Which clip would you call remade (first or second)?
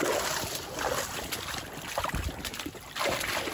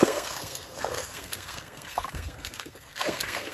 second